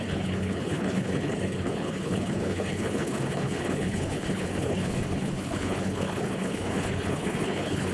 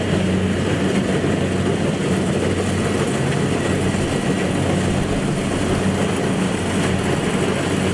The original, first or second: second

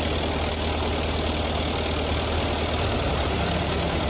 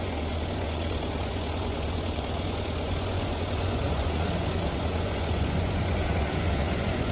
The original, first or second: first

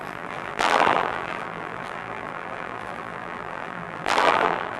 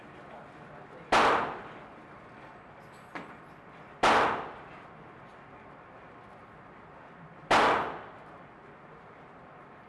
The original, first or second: second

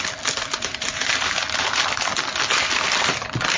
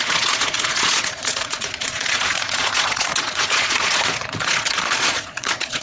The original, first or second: first